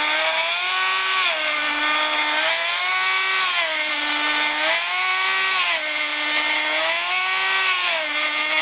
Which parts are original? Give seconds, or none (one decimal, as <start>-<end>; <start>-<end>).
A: 0.0-8.6